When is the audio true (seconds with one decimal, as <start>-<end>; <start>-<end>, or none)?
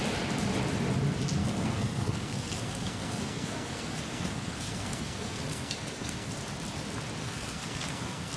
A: 0.0-1.4; 6.3-7.2